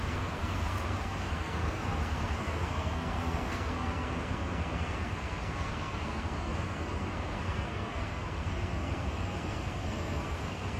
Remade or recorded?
remade